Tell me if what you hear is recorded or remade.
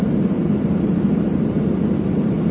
remade